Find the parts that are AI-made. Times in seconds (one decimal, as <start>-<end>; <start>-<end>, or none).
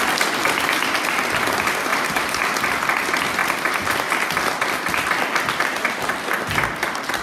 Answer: 1.9-2.4; 3.4-4.1